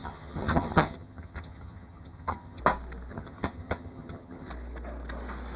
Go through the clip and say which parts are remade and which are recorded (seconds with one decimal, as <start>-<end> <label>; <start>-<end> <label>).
0.0-2.6 remade; 2.6-3.1 recorded; 3.1-4.5 remade; 4.5-5.6 recorded